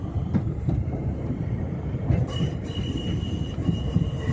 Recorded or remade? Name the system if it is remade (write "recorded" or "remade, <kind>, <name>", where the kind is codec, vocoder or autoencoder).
remade, vocoder, BigVGAN v2